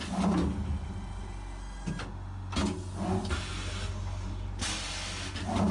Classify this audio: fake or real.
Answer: real